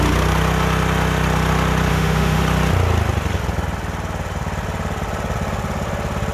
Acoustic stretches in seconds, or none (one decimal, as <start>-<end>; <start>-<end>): 0.0-1.9; 2.4-6.3